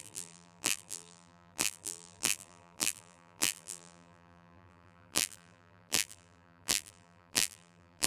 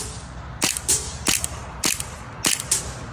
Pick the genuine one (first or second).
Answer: second